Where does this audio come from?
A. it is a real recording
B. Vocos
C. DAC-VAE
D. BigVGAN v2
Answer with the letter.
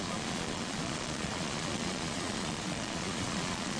B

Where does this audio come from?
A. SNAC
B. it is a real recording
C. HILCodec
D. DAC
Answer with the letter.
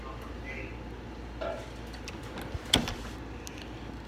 B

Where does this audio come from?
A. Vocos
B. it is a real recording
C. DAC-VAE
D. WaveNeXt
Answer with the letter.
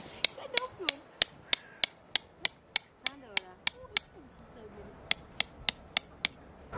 B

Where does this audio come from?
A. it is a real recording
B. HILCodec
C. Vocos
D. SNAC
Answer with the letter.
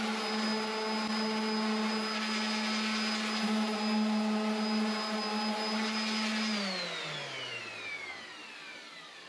A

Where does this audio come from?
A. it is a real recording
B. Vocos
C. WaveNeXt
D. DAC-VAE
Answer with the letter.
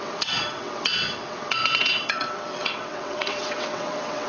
C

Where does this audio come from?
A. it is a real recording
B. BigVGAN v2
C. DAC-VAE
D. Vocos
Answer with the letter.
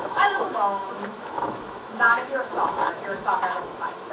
C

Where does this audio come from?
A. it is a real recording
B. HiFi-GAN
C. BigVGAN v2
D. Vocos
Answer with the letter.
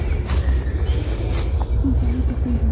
A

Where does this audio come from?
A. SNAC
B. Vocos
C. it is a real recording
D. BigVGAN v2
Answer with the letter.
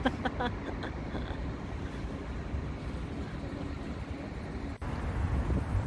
C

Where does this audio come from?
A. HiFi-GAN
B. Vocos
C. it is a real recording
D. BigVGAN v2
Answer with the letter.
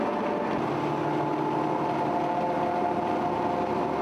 C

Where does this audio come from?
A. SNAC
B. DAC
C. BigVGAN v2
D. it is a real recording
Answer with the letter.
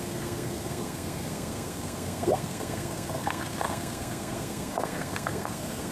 A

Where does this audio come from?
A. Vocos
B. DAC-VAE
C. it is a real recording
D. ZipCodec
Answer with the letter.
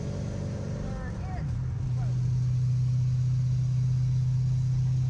C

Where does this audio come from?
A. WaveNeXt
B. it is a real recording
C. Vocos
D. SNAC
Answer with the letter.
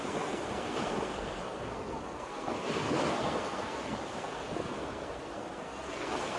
D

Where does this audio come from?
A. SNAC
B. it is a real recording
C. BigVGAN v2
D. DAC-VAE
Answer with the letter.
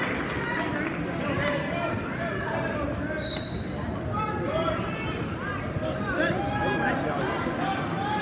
B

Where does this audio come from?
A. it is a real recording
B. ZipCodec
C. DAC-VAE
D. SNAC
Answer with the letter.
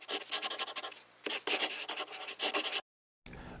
A